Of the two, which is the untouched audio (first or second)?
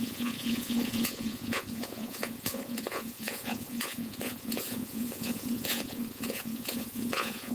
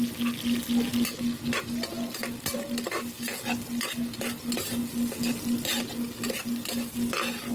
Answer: second